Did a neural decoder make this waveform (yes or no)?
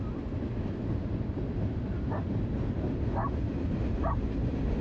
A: no